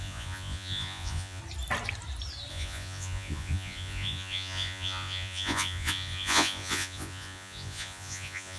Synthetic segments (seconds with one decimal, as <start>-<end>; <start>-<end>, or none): 0.0-1.4; 2.5-8.6